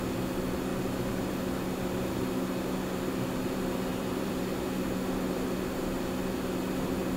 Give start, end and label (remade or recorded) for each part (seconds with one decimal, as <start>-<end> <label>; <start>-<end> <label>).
0.0-0.7 recorded; 0.7-1.3 remade; 1.3-3.9 recorded; 3.9-4.4 remade; 4.4-7.2 recorded